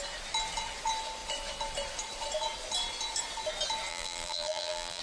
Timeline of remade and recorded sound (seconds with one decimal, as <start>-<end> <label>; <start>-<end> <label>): 0.0-3.9 recorded; 3.9-5.0 remade